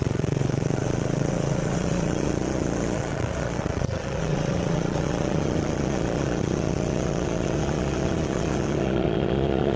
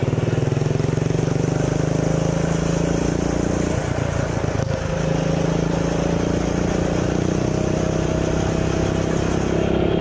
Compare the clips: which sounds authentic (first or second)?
second